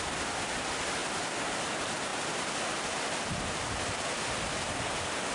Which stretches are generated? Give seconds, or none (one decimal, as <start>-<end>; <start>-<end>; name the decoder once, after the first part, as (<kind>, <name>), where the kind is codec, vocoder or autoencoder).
none